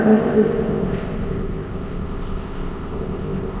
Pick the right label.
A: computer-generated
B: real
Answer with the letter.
A